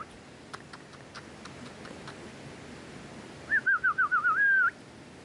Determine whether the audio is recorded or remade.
recorded